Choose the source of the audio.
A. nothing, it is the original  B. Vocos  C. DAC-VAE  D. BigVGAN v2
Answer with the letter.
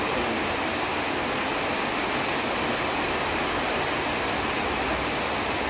A